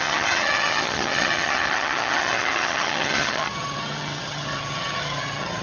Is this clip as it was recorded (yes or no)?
no